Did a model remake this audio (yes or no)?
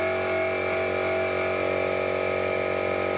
no